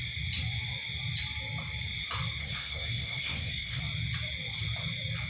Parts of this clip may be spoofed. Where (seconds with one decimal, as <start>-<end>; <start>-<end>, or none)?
2.4-3.8